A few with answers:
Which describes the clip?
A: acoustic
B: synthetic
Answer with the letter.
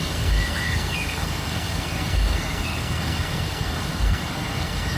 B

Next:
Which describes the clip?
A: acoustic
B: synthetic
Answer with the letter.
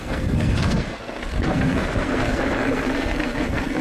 B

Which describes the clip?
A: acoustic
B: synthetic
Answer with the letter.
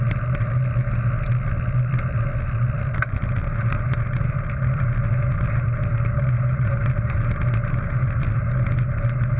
A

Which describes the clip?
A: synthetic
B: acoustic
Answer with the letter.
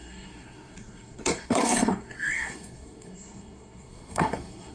A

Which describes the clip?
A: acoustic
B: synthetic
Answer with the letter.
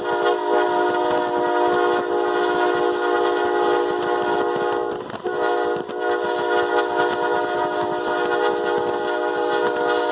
A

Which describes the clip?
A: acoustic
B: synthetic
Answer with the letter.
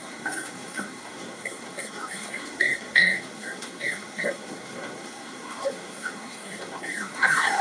B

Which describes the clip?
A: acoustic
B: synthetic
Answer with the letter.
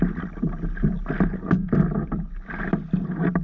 A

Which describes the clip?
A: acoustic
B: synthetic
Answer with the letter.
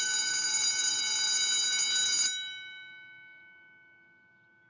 A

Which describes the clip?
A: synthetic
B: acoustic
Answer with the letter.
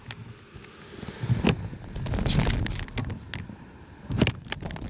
B